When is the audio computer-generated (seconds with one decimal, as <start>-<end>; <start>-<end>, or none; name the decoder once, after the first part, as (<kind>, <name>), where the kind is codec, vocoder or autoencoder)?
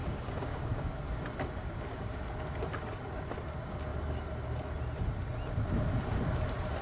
0.0-1.2 (codec, DAC); 1.6-2.2